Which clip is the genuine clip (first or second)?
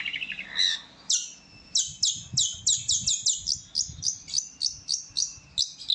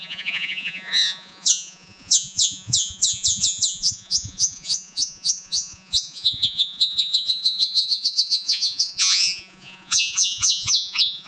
first